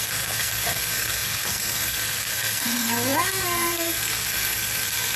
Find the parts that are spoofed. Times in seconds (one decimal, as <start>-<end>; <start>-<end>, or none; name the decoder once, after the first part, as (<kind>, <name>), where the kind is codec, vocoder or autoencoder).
0.0-5.2 (codec, SNAC)